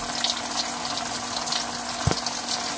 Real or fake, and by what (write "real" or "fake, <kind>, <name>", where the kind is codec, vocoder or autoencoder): real